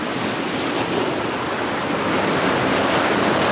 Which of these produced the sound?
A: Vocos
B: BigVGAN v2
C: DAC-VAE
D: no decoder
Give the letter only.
D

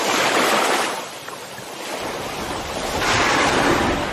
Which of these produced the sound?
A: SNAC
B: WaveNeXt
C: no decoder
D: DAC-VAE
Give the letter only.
C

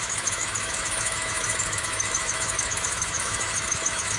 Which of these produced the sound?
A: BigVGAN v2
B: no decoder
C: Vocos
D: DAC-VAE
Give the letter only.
D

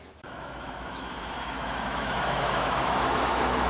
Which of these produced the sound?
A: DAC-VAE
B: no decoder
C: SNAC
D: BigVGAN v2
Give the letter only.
A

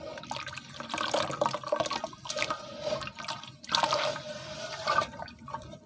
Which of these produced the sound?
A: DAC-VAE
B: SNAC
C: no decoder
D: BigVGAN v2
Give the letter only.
C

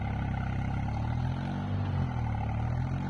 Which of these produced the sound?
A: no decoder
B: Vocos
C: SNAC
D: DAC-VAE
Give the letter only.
A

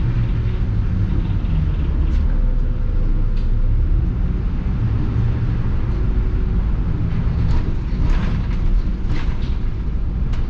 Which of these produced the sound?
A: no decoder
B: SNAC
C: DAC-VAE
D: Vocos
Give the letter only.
A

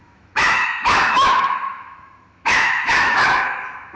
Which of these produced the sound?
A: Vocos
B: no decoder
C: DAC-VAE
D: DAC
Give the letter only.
C